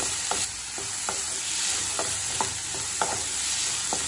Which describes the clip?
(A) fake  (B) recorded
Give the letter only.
B